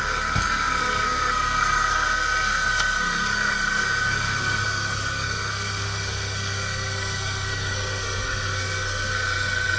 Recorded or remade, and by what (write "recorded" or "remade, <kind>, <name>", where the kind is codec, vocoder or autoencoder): remade, codec, SNAC